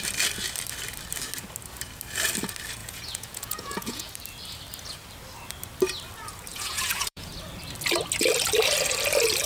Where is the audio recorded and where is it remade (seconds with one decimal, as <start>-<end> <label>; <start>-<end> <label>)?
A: 0.0-2.8 recorded; 2.8-4.1 remade; 4.1-6.5 recorded; 6.5-7.3 remade; 7.3-9.5 recorded